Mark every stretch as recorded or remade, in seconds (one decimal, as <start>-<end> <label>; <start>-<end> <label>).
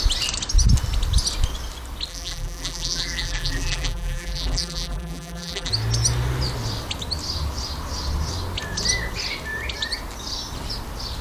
0.0-2.1 recorded; 2.1-5.7 remade; 5.7-11.2 recorded